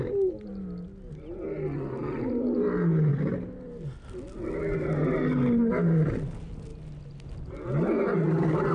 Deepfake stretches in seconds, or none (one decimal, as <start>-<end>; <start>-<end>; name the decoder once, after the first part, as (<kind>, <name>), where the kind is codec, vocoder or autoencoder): none